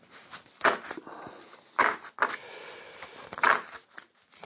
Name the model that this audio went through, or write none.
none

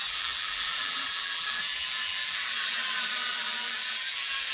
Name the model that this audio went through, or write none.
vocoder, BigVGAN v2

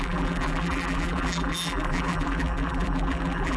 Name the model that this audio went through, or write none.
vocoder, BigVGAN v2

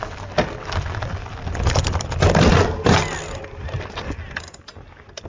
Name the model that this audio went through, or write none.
none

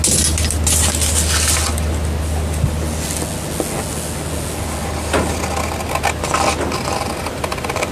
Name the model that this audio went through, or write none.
none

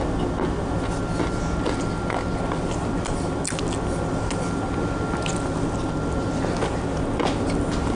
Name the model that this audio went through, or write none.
none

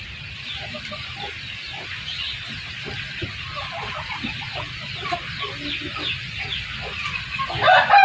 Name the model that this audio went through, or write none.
vocoder, BigVGAN v2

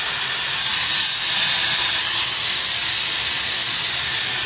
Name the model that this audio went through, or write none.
none